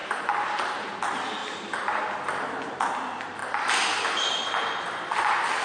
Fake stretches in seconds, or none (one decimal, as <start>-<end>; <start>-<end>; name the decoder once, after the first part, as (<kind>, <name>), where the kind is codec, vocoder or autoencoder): 0.0-0.9 (vocoder, BigVGAN v2); 1.4-2.0